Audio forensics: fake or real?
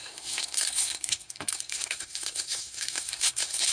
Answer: fake